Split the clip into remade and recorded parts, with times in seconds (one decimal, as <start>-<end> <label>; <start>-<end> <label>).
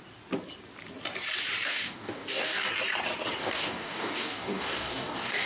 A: 0.0-1.7 recorded; 1.7-2.7 remade; 2.7-3.4 recorded; 3.4-5.5 remade